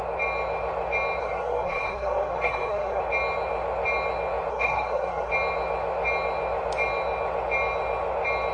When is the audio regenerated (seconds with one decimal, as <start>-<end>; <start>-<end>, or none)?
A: 1.2-3.0; 4.5-5.3